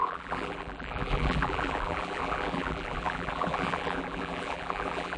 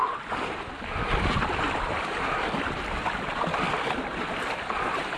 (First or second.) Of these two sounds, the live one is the second